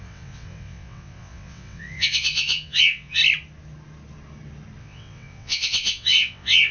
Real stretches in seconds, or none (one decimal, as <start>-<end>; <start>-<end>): 3.2-4.8